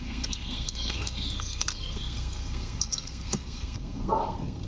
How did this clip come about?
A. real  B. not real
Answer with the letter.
B